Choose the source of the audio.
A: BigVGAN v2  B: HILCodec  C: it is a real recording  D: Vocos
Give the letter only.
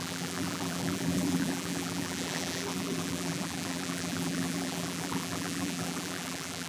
A